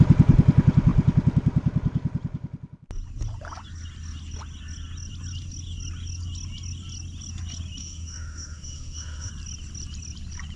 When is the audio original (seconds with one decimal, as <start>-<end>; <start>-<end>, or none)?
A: 0.0-7.8; 9.3-10.6